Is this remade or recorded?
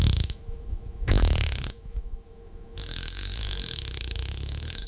remade